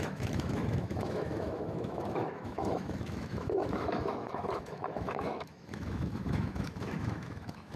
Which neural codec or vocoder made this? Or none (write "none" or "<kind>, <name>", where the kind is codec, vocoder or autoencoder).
autoencoder, DAC-VAE